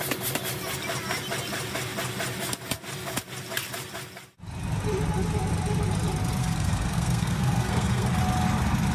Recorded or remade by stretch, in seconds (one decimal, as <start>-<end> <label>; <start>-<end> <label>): 0.0-6.4 recorded; 6.4-8.2 remade; 8.2-8.9 recorded